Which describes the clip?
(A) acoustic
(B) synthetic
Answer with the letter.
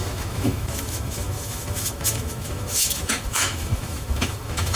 B